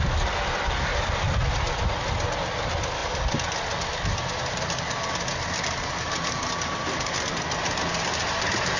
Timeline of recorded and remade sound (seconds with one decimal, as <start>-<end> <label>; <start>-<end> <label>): 0.0-8.8 recorded